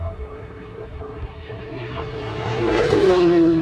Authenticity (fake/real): fake